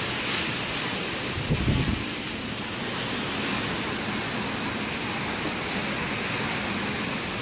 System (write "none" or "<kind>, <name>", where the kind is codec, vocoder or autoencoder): none